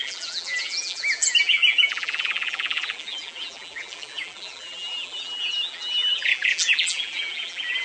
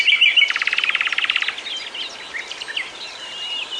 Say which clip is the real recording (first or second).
second